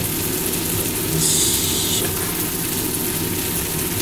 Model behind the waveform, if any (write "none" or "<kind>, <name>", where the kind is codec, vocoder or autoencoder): none